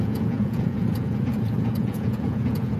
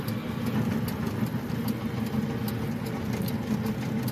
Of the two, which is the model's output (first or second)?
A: first